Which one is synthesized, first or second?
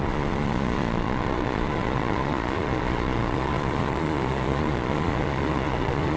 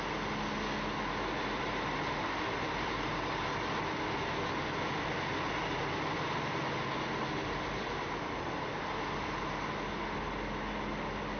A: first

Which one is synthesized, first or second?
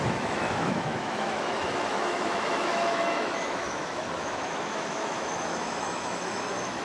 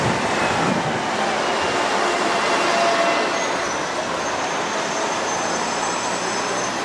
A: first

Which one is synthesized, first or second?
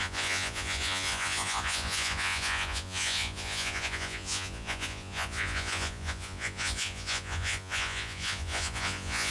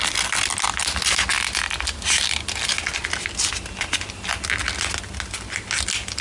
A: first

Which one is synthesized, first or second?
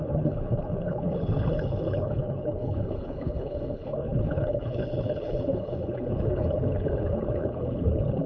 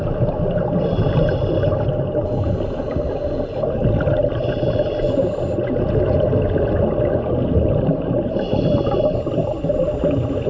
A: first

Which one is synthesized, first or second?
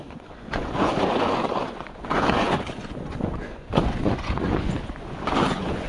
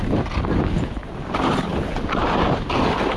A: first